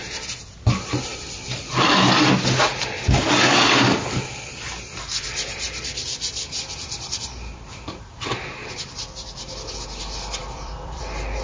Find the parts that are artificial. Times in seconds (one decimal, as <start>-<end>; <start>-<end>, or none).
1.1-1.8; 10.4-11.0